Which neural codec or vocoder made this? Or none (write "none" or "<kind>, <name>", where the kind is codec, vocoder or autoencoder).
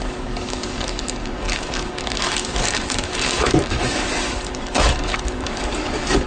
codec, DAC